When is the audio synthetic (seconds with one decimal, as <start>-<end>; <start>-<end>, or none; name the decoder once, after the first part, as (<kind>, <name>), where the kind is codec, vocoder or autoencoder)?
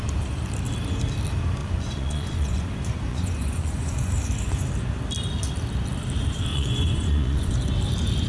1.6-2.7 (vocoder, Vocos); 3.1-4.1; 6.5-7.5